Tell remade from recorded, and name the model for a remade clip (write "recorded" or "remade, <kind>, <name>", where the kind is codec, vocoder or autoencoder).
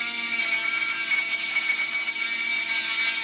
recorded